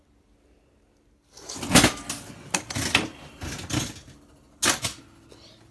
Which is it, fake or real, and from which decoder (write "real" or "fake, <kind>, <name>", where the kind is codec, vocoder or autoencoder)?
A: real